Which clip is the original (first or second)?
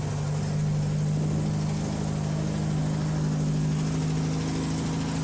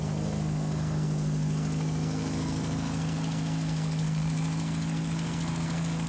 first